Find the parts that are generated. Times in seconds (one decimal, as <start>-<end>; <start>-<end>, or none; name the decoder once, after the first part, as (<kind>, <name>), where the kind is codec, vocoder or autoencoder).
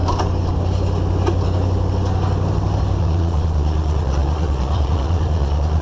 3.0-5.8 (vocoder, Vocos)